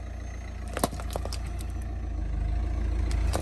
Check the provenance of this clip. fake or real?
real